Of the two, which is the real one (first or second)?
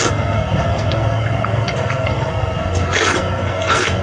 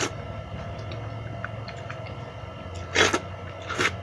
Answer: second